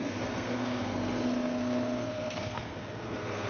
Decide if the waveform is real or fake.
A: fake